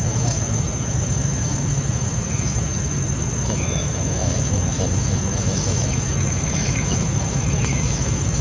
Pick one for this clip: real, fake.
fake